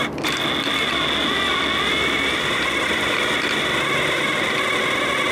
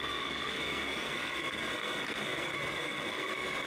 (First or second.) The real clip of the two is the first